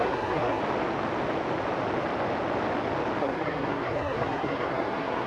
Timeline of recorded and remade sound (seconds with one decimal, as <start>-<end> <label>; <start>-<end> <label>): 0.0-0.6 remade; 0.6-3.2 recorded; 3.2-5.3 remade